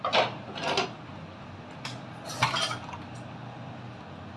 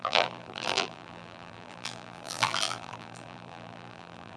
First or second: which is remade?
second